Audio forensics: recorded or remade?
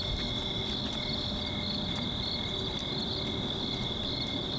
recorded